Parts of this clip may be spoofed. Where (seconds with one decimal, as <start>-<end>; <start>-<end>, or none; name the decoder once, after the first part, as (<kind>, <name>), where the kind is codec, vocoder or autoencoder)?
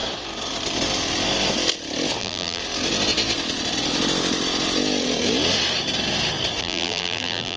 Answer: 2.2-2.6 (vocoder, BigVGAN v2); 6.6-7.6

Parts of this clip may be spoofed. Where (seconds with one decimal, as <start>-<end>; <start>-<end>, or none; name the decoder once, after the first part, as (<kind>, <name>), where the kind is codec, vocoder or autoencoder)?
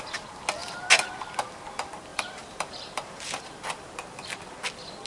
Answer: 2.1-3.4 (vocoder, BigVGAN v2)